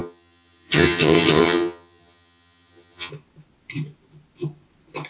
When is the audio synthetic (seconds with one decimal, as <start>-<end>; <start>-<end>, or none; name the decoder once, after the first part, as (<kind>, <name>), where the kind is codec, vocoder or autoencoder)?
0.0-3.1 (vocoder, HiFi-GAN)